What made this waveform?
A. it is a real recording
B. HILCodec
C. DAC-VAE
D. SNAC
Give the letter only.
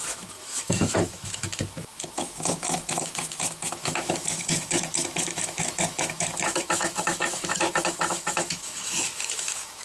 C